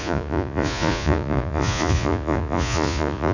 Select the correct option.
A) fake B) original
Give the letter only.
A